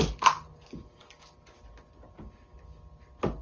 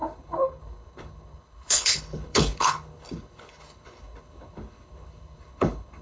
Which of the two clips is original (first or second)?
first